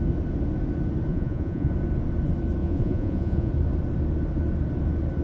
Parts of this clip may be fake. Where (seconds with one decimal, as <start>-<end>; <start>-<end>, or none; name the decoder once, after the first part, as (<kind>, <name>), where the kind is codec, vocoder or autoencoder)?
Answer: 1.1-1.7 (vocoder, Vocos); 2.6-3.5